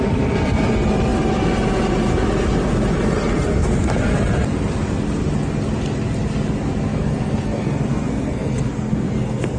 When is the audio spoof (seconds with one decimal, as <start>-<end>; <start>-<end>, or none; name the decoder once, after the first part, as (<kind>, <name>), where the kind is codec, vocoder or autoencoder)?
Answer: 6.9-9.6 (codec, SNAC)